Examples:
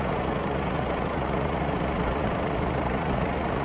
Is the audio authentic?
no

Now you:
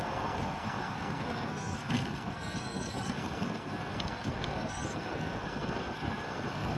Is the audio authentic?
no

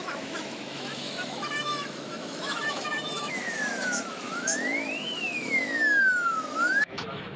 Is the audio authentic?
no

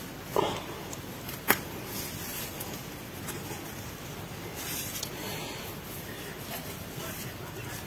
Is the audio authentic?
yes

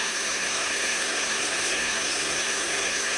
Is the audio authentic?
no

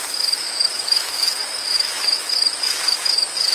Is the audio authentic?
no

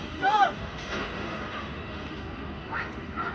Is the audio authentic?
no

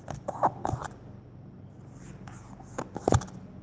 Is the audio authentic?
yes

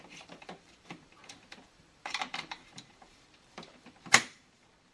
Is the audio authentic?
no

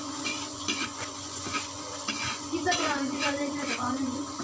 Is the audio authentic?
no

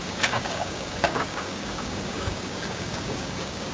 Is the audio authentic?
no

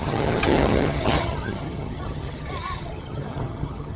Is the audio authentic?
no